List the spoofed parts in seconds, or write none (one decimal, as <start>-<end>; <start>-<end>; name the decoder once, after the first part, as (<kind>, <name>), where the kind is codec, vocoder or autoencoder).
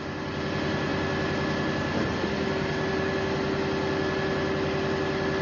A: none